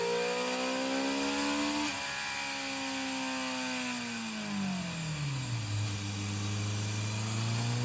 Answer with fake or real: real